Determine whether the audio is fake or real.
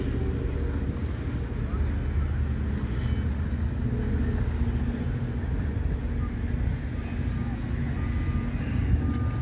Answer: real